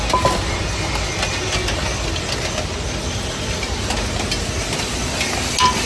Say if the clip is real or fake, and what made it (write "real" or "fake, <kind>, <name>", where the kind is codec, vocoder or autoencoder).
real